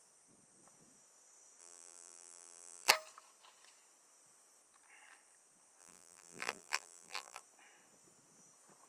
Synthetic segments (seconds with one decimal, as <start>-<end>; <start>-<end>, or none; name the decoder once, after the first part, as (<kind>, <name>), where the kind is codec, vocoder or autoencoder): 1.6-2.9 (vocoder, BigVGAN v2); 5.8-7.4